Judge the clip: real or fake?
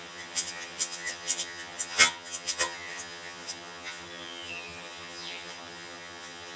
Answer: fake